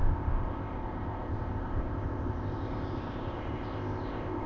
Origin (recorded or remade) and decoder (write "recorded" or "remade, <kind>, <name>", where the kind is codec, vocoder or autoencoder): remade, codec, ZipCodec